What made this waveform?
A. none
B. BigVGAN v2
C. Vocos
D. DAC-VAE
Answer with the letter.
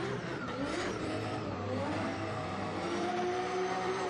B